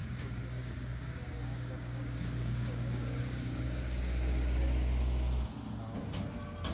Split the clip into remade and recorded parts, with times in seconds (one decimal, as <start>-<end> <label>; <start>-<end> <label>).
0.0-4.0 remade; 4.0-6.7 recorded